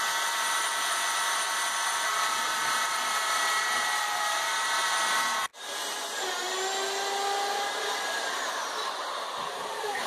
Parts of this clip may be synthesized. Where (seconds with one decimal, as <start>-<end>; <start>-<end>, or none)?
0.0-5.5; 7.5-10.1